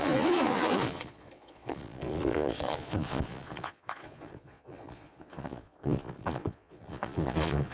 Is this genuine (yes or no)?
no